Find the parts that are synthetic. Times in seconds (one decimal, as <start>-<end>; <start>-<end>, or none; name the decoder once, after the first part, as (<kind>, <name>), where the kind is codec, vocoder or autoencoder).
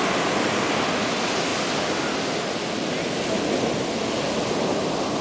none